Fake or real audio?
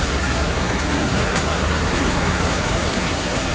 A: fake